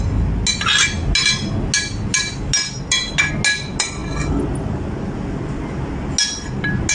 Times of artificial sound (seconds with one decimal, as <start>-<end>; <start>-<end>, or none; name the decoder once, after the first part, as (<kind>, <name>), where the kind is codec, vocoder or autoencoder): none